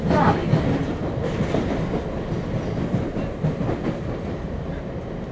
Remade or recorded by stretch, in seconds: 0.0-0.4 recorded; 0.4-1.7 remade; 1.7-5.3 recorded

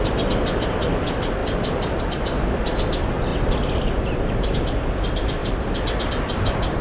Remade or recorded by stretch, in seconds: 0.0-1.4 recorded; 1.4-2.0 remade; 2.0-3.3 recorded; 3.3-4.0 remade; 4.0-5.4 recorded; 5.4-6.8 remade

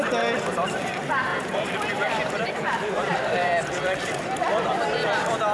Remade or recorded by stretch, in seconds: 0.0-1.3 recorded; 1.3-2.9 remade; 2.9-3.4 recorded; 3.4-4.2 remade; 4.2-5.5 recorded

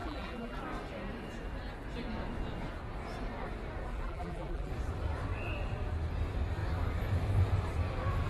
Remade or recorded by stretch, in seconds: 0.0-0.6 remade; 0.6-3.9 recorded; 3.9-4.7 remade; 4.7-8.3 recorded

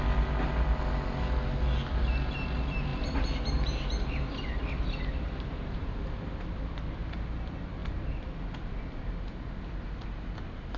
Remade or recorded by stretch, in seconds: 0.0-2.9 recorded; 2.9-6.0 remade; 6.0-10.8 recorded

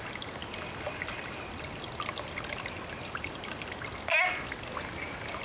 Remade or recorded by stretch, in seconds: 0.0-0.4 recorded; 0.4-3.6 remade; 3.6-5.4 recorded